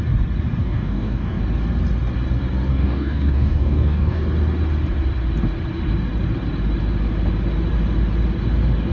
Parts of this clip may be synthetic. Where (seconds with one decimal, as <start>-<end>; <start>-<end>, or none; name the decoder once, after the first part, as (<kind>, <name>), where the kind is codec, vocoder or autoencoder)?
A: 0.6-1.4 (codec, DAC); 2.7-4.2

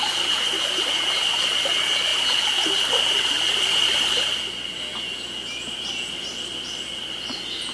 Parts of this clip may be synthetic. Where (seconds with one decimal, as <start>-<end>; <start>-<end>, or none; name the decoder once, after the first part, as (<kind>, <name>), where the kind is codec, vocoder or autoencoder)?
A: none

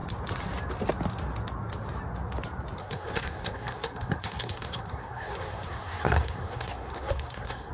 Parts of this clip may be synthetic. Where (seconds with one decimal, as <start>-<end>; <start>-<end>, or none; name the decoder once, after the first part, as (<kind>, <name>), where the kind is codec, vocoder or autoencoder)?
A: 2.8-7.7 (codec, SNAC)

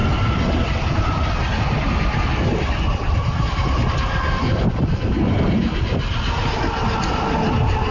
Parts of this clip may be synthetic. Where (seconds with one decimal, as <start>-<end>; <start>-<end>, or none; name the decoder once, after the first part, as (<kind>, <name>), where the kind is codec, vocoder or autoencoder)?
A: none

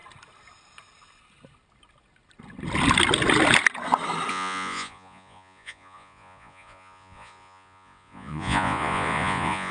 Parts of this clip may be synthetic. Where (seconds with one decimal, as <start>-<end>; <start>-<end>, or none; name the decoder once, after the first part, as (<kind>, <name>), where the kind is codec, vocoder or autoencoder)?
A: 4.3-9.7 (vocoder, Vocos)

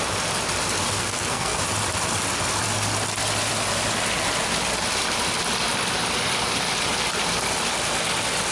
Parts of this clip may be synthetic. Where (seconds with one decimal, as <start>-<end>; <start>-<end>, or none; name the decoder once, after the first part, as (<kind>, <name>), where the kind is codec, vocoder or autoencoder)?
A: 1.0-1.6 (codec, SNAC)

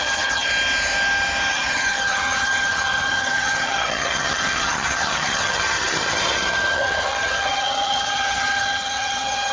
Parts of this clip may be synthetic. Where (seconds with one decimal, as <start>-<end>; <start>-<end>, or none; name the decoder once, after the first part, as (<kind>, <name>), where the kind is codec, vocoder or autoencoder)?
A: 0.0-0.5 (vocoder, HiFi-GAN); 1.5-9.5